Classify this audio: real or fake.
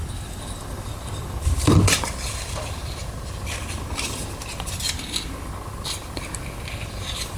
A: fake